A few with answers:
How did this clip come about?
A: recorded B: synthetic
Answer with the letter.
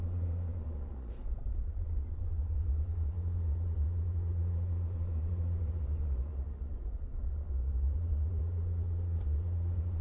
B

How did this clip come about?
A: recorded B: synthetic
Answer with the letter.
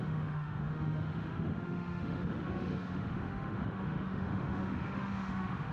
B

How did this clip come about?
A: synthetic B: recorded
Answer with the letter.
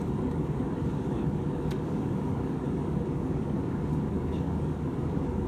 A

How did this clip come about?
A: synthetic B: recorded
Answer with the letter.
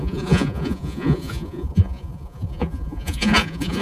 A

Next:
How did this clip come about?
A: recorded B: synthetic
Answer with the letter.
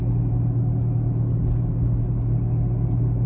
A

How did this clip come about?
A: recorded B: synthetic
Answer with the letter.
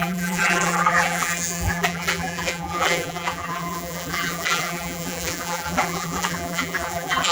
B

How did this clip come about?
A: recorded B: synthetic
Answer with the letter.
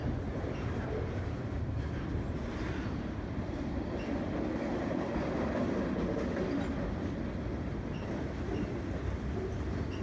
A